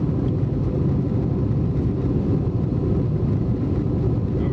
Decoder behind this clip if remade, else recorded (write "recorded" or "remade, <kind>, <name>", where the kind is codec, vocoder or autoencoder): recorded